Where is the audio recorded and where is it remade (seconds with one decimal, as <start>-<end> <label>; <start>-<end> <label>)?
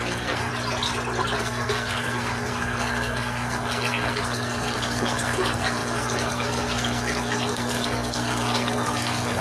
0.0-0.5 remade; 0.5-1.4 recorded; 1.4-9.4 remade